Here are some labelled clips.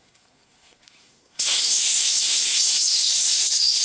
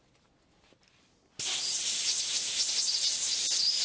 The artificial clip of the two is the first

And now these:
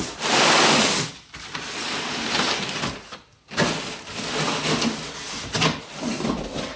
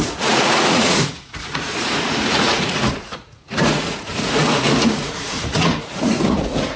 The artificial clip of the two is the second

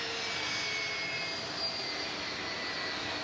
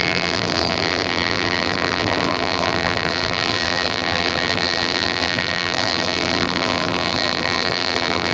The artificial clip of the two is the second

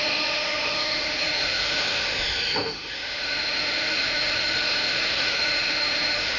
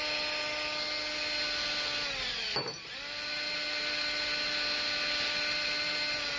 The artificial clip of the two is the first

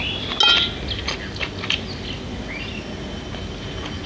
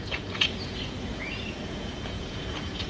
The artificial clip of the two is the second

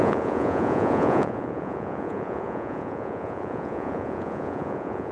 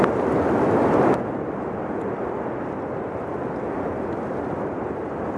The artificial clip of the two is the first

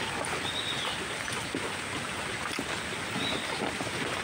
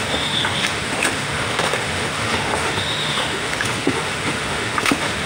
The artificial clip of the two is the second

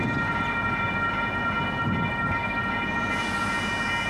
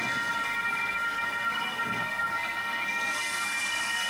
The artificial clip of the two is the second